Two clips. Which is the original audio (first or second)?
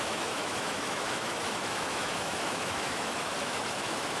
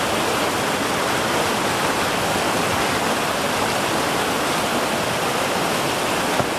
second